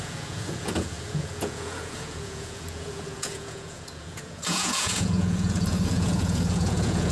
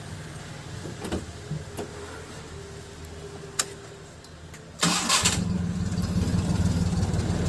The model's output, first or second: first